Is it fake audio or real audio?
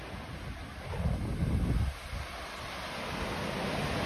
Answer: real